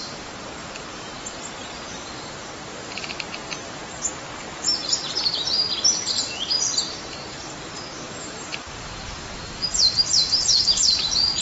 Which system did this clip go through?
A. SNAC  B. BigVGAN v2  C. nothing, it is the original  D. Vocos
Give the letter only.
B